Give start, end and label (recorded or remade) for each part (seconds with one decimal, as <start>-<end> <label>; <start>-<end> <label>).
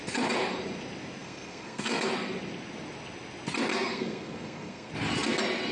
0.0-1.2 recorded; 1.2-2.1 remade; 2.1-3.7 recorded; 3.7-4.9 remade; 4.9-5.7 recorded